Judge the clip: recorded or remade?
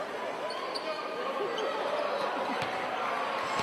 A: recorded